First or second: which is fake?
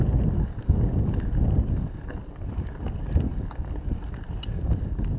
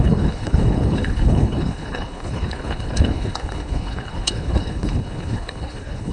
second